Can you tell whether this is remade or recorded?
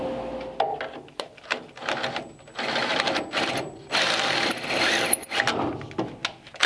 recorded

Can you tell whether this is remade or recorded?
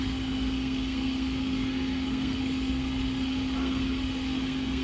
remade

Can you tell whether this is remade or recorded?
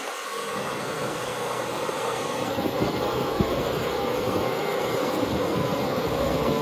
remade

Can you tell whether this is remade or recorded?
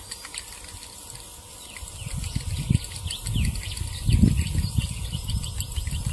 recorded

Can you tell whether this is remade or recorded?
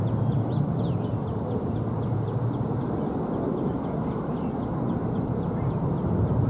recorded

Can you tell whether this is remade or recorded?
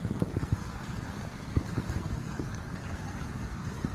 remade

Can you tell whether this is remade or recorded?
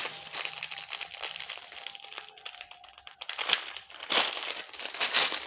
recorded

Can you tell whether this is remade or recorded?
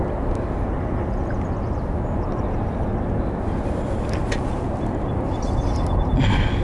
recorded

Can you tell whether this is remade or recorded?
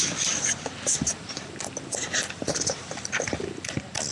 recorded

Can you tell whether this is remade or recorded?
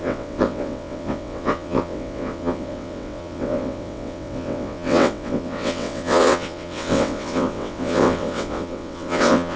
remade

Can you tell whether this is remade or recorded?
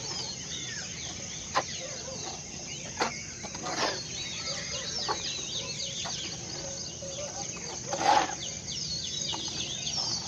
recorded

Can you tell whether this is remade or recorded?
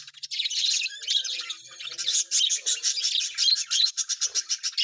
recorded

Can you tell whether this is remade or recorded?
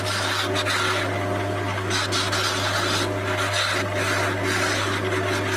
recorded